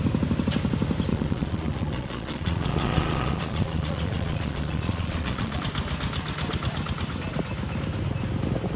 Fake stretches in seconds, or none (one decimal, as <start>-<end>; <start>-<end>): 1.1-5.6